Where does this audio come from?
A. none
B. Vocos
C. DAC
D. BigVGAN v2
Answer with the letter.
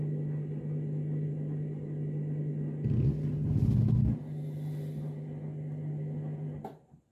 A